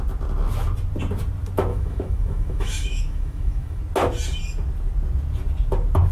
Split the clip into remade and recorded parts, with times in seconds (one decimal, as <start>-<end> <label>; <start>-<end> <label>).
0.0-1.7 recorded; 1.7-3.8 remade; 3.8-6.1 recorded